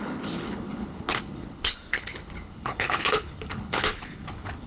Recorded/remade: remade